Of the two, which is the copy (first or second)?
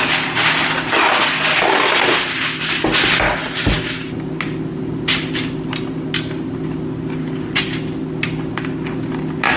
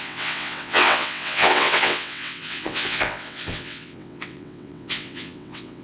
second